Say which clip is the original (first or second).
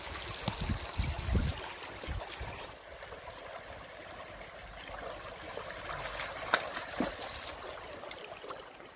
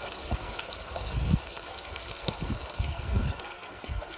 first